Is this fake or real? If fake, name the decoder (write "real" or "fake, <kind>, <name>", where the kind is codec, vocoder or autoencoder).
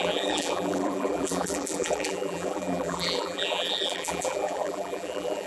fake, vocoder, BigVGAN v2